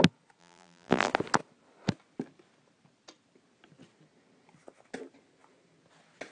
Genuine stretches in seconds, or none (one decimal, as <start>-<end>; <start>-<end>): 0.0-0.4; 1.1-6.3